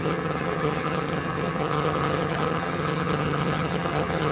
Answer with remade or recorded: remade